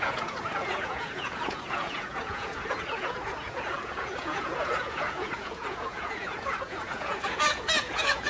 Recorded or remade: remade